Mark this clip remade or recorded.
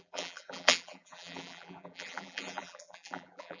remade